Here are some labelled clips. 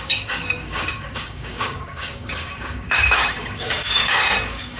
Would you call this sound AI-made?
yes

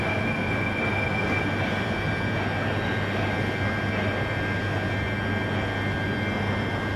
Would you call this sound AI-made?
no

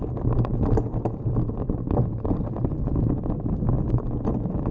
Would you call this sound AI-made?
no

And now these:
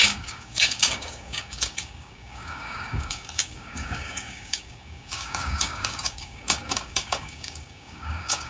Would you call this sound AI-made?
yes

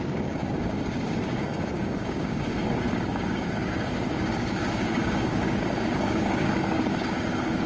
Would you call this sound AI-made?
yes